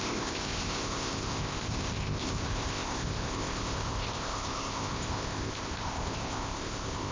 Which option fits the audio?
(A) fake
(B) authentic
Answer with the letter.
A